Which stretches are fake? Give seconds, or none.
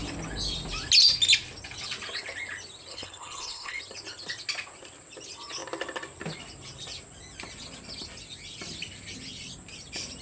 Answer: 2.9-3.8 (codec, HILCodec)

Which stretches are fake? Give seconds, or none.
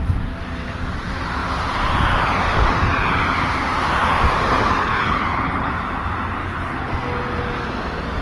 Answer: 4.8-5.7 (codec, HILCodec); 6.4-6.9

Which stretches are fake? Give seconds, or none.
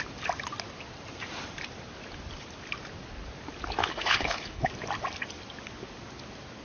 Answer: 3.8-4.7 (codec, HILCodec)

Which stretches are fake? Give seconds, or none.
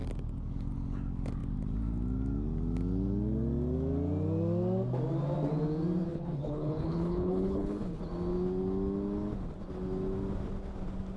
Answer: 6.1-8.0 (codec, HILCodec)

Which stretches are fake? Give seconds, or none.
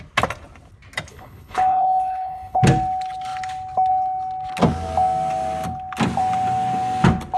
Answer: 1.1-2.6 (codec, HILCodec)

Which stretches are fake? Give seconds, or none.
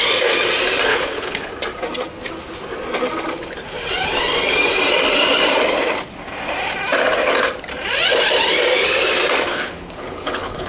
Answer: 0.9-1.5 (codec, HILCodec); 9.5-10.7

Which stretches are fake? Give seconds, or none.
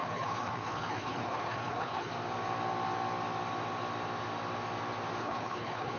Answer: 0.0-2.1 (codec, HILCodec); 5.2-6.0